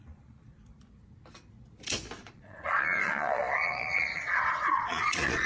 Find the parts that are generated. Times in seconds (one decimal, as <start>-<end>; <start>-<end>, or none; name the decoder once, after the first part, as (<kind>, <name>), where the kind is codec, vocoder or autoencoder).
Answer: 0.0-0.5 (vocoder, Vocos); 2.2-5.5